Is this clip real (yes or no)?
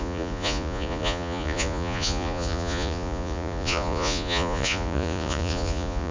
no